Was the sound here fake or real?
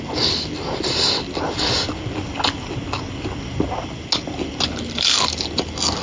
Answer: real